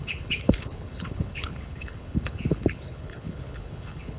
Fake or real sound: fake